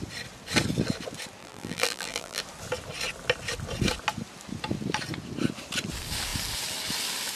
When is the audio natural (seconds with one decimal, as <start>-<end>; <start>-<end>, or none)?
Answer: 0.0-1.4; 2.4-7.4